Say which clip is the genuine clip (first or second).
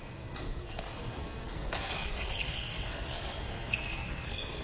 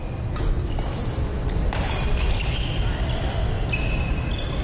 second